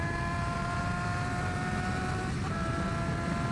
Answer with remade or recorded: remade